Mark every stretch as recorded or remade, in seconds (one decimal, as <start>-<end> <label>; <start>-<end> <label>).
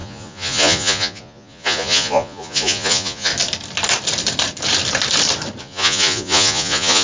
0.0-3.3 remade; 3.3-5.6 recorded; 5.6-7.0 remade